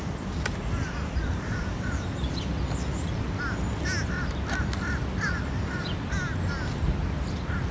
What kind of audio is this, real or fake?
real